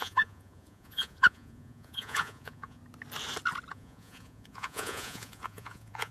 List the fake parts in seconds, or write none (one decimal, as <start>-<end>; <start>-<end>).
0.0-2.8; 3.7-6.1